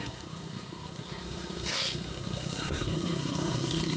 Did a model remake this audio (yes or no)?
yes